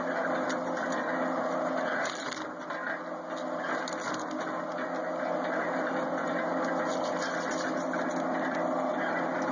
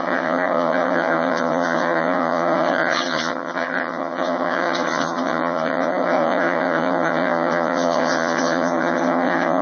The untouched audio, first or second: first